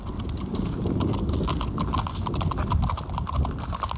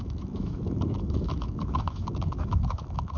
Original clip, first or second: first